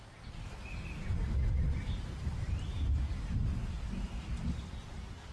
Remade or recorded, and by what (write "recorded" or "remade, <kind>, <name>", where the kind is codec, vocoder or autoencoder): recorded